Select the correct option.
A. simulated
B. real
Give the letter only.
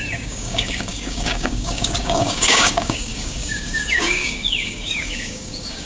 A